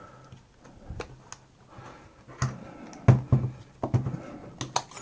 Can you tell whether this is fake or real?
real